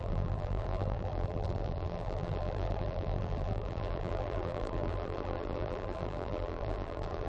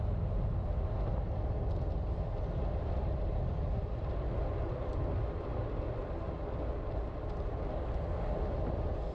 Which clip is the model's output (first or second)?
first